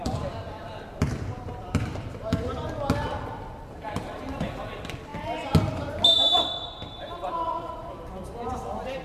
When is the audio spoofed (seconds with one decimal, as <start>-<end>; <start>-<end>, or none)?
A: 0.0-2.5; 3.0-5.1; 7.3-9.0